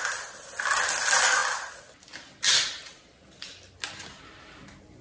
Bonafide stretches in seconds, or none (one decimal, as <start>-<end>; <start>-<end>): 0.0-5.0